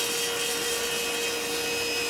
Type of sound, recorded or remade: recorded